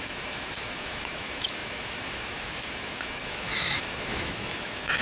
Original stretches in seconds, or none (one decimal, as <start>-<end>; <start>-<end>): none